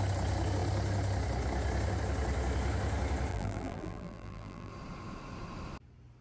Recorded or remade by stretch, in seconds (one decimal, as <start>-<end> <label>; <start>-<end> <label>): 0.0-3.3 recorded; 3.3-4.7 remade; 4.7-6.2 recorded